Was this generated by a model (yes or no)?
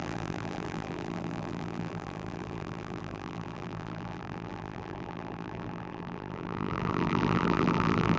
yes